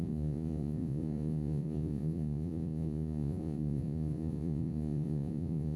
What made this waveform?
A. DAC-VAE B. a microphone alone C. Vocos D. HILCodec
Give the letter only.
C